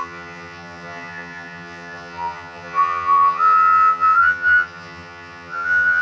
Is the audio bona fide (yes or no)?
no